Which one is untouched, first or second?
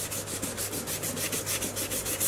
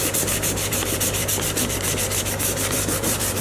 first